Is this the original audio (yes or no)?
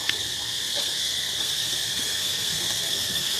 no